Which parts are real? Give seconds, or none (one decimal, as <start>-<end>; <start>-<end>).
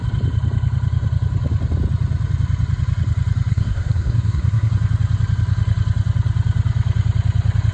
0.0-3.5; 4.7-7.7